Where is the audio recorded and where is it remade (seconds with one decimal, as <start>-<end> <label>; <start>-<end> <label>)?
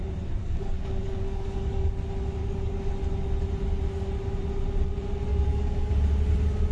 0.0-0.4 recorded; 0.4-1.9 remade; 1.9-2.4 recorded; 2.4-2.9 remade; 2.9-5.3 recorded; 5.3-5.9 remade; 5.9-6.7 recorded